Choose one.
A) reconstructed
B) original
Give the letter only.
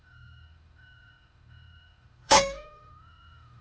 A